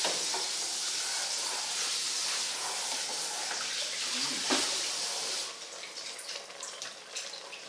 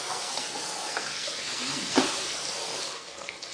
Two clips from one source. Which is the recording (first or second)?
first